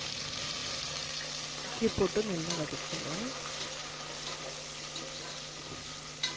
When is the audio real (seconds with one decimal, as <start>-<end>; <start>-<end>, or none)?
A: 0.0-6.4

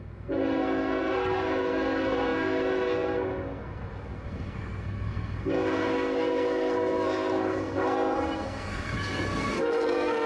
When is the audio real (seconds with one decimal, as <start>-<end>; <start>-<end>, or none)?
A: none

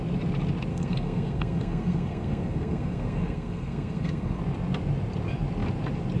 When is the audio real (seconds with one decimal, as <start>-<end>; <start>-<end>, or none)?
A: 0.0-0.7; 4.4-6.2

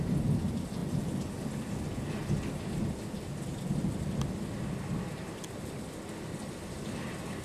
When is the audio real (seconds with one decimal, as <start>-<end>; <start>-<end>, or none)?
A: 0.0-7.4

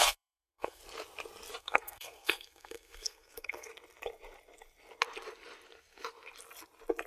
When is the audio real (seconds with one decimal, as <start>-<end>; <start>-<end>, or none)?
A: 0.8-1.6; 3.7-7.1

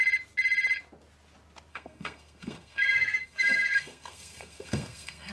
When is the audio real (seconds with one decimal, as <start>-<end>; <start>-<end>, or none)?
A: 0.0-1.7